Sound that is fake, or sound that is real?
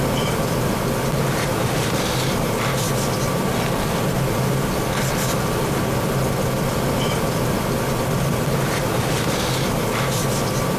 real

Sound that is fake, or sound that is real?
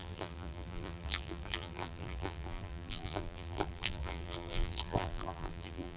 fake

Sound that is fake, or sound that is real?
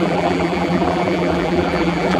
fake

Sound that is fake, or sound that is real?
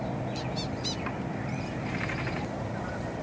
real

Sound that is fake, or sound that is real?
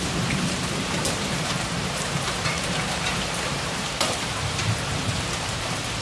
fake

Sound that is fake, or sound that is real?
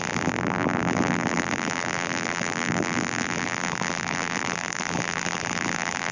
fake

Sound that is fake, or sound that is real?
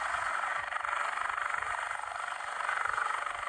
real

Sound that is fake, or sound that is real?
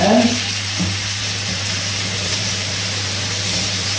fake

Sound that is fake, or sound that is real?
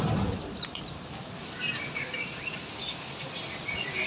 real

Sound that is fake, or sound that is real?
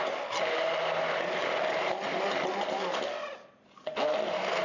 real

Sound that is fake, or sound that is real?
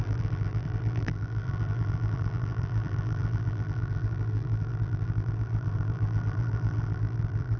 fake